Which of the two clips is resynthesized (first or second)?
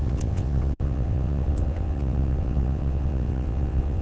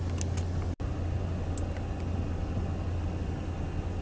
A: first